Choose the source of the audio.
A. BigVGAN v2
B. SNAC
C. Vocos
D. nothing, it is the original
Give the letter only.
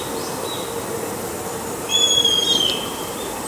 D